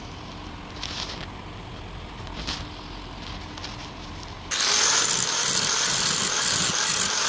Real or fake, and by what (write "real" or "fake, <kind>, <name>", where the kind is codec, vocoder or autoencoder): real